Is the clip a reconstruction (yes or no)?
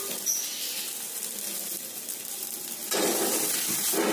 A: no